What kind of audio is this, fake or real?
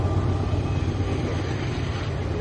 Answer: real